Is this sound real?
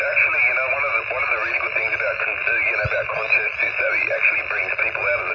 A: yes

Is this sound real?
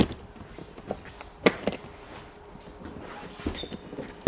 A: yes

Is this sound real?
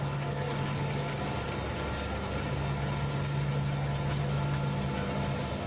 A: yes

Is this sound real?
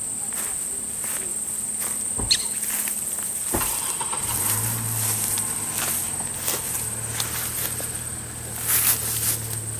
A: yes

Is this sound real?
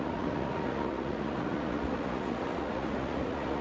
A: no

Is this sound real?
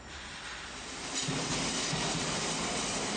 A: yes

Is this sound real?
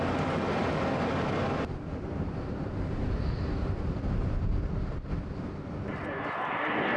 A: yes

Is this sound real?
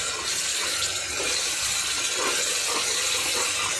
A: yes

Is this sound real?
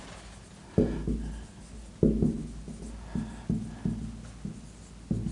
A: yes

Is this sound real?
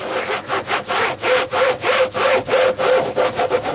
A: yes